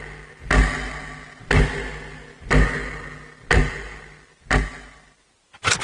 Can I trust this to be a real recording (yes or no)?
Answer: yes